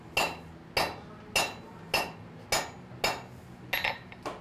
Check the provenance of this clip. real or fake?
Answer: real